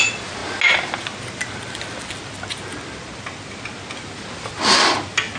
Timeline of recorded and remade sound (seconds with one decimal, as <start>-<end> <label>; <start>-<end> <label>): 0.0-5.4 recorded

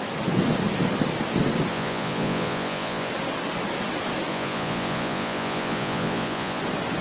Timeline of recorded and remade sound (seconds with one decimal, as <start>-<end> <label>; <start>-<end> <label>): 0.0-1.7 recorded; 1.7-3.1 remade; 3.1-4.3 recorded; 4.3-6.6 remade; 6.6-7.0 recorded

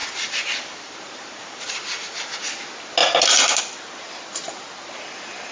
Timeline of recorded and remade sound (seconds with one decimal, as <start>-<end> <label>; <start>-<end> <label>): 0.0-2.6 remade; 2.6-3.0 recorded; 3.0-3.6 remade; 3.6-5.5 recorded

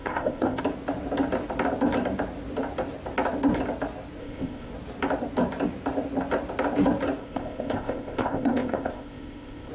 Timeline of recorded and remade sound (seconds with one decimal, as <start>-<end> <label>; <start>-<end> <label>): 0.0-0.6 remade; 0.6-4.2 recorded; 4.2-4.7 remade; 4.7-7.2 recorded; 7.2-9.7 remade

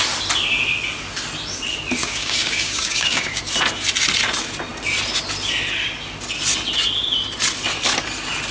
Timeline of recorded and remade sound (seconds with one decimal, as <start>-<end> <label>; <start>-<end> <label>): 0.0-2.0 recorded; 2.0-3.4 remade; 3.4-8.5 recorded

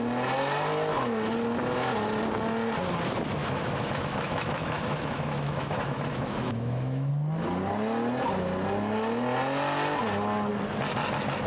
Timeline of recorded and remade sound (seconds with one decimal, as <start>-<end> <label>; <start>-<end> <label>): 0.0-3.4 recorded; 3.4-7.1 remade; 7.1-11.5 recorded

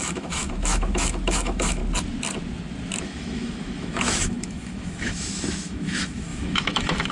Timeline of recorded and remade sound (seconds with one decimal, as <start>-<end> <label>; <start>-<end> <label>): 0.0-1.8 remade; 1.8-3.0 recorded; 3.0-7.1 remade

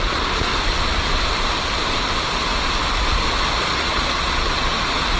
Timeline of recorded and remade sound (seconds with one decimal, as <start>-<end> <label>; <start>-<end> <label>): 0.0-0.5 remade; 0.5-3.6 recorded; 3.6-5.2 remade